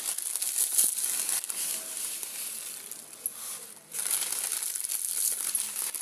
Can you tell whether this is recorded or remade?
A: recorded